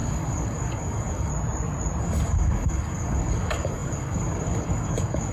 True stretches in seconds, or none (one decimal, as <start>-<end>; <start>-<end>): 1.3-2.0